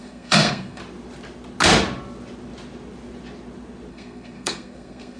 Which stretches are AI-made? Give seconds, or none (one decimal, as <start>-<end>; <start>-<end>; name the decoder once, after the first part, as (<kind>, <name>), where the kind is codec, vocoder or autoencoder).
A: 0.0-0.8 (codec, SNAC); 3.9-5.2